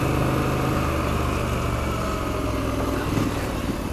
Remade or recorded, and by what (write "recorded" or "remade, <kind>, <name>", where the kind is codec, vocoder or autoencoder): recorded